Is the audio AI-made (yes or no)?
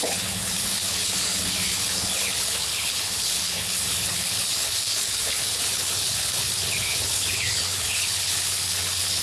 yes